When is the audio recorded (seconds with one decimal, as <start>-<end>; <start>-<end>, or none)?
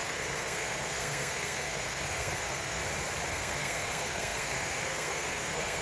2.8-3.3